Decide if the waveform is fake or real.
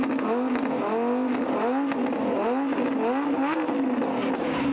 real